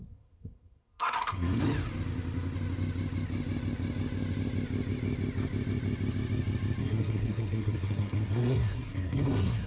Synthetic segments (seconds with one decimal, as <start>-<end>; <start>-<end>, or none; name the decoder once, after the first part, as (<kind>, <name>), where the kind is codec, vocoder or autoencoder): 0.0-1.6 (codec, SNAC); 6.8-9.7

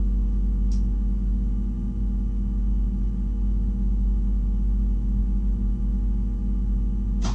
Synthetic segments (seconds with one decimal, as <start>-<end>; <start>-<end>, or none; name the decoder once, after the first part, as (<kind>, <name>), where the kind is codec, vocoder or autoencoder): none